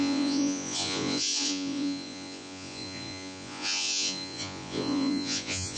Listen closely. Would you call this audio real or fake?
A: fake